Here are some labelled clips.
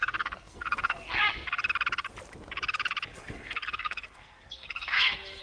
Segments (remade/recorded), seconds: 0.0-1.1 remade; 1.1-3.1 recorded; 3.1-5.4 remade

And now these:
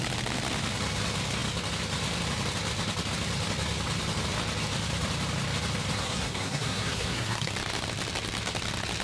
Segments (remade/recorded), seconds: 0.0-6.0 recorded; 6.0-7.5 remade; 7.5-9.0 recorded

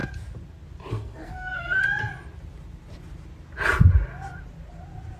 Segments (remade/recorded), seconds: 0.0-0.9 recorded; 0.9-1.8 remade; 1.8-5.2 recorded

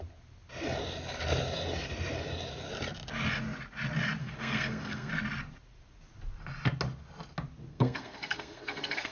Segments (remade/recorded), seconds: 0.0-4.2 recorded; 4.2-5.1 remade; 5.1-7.7 recorded; 7.7-9.1 remade

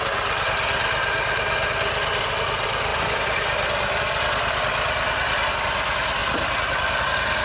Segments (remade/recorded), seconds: 0.0-7.4 recorded

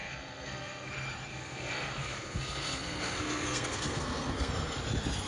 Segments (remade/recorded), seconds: 0.0-0.9 remade; 0.9-1.3 recorded; 1.3-4.5 remade; 4.5-5.3 recorded